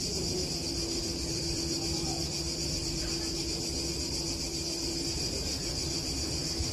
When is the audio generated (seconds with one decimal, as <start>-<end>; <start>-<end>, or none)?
1.3-3.0; 5.6-6.7